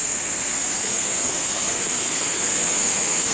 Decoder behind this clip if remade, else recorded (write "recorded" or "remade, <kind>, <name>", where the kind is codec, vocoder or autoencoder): remade, codec, SNAC